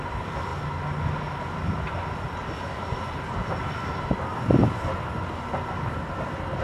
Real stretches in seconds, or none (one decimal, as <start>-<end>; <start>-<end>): 0.0-3.4; 4.3-6.6